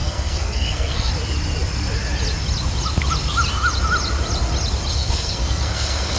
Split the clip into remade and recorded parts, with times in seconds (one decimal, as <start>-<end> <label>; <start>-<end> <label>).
0.0-1.1 remade; 1.1-4.9 recorded; 4.9-6.2 remade